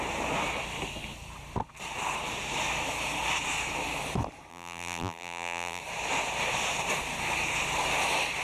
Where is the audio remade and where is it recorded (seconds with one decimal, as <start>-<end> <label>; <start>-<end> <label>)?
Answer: 0.0-4.5 recorded; 4.5-5.8 remade; 5.8-8.4 recorded